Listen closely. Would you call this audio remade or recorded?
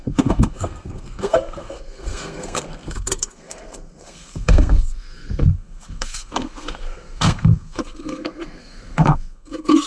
remade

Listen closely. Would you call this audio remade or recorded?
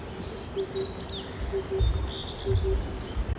recorded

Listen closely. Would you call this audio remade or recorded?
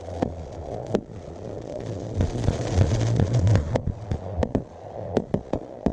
remade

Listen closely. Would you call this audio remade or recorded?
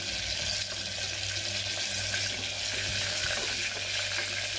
recorded